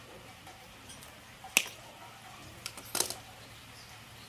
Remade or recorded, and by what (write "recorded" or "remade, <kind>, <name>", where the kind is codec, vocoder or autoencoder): recorded